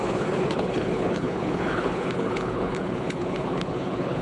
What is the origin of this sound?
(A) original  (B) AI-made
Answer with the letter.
B